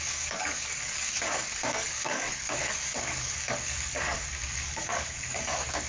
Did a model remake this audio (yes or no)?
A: yes